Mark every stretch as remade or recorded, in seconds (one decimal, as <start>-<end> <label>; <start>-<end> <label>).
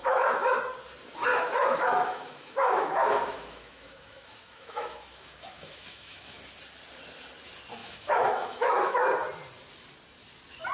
0.0-0.6 remade; 0.6-1.3 recorded; 1.3-6.4 remade; 6.4-7.8 recorded; 7.8-9.0 remade; 9.0-10.7 recorded